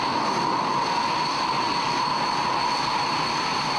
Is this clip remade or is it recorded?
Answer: recorded